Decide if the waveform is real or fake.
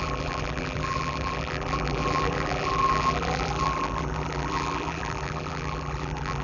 fake